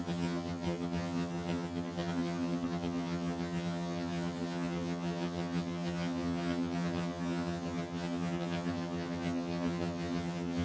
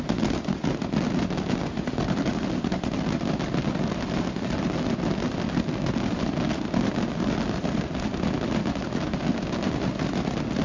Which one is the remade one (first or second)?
first